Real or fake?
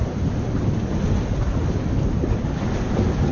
real